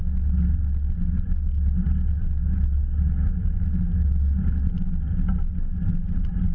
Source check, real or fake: real